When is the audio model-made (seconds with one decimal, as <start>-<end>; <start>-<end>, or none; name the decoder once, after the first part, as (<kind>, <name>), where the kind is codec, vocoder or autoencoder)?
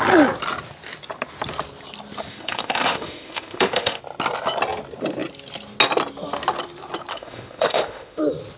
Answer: 2.3-4.0 (autoencoder, DAC-VAE); 7.1-8.2